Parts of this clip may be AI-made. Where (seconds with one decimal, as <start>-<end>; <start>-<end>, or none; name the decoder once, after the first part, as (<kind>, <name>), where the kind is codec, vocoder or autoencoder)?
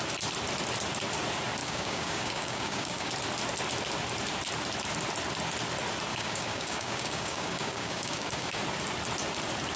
1.6-3.1 (codec, DAC); 6.1-8.6